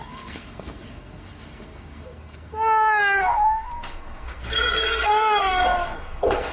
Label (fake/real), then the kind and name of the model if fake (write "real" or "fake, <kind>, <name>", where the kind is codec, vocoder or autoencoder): fake, codec, SNAC